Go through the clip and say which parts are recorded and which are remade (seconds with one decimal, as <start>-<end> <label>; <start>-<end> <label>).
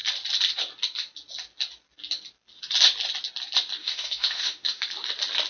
0.0-3.8 recorded; 3.8-4.8 remade; 4.8-5.5 recorded